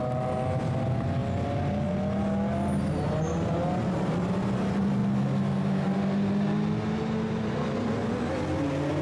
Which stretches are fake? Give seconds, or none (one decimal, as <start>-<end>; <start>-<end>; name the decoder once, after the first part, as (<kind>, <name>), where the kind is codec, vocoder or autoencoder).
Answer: none